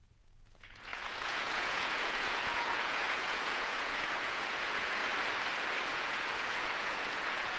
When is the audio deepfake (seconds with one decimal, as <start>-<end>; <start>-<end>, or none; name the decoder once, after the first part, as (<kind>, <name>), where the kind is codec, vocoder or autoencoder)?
0.0-5.0 (vocoder, Vocos); 5.9-7.6